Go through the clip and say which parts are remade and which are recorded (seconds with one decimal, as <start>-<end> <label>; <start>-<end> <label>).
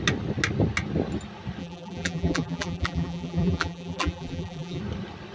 0.0-1.6 recorded; 1.6-4.8 remade; 4.8-5.3 recorded